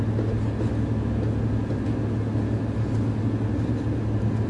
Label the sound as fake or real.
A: real